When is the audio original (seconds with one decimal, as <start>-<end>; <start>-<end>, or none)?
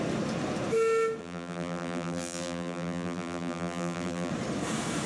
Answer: 0.0-1.2; 4.3-5.1